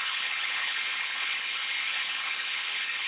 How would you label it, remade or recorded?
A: remade